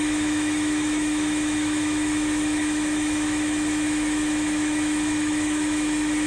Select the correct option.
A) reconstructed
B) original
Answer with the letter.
A